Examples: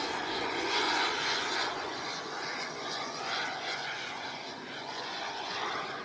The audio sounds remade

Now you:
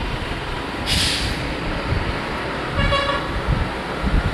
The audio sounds recorded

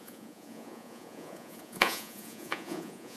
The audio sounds remade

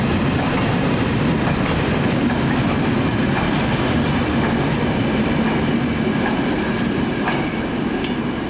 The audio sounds recorded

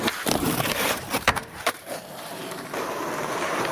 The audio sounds remade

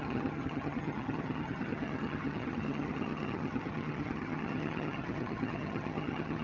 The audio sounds remade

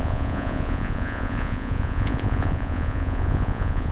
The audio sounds remade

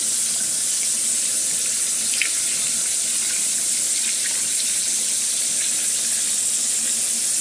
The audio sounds recorded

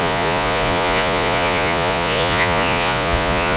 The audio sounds remade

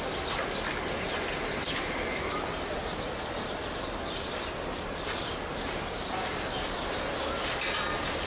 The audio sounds recorded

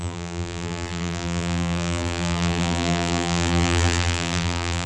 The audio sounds remade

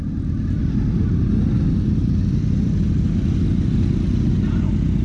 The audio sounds recorded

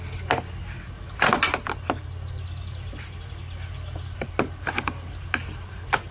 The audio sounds recorded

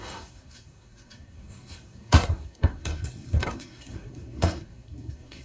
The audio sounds remade